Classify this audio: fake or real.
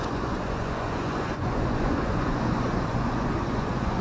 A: fake